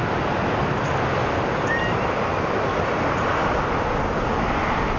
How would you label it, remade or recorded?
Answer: recorded